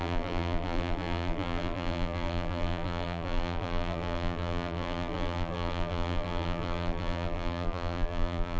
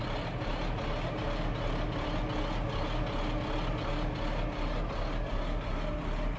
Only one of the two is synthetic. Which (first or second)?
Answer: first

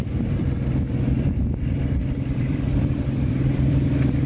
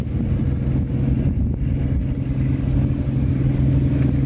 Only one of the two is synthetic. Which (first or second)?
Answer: first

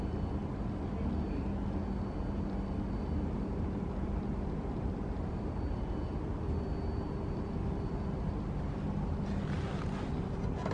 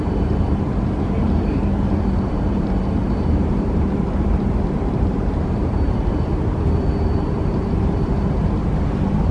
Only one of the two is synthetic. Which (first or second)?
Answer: second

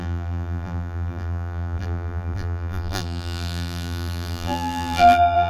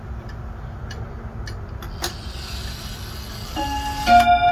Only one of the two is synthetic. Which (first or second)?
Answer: first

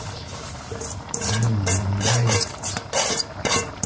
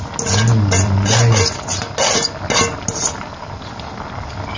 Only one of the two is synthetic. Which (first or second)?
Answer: first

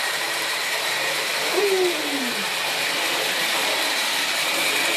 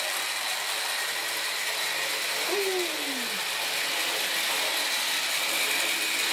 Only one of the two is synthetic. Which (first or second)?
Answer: first